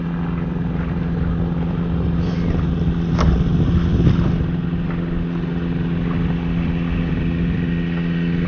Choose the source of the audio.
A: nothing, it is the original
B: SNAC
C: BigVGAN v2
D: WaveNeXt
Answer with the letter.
A